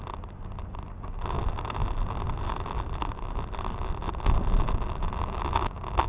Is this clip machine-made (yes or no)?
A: no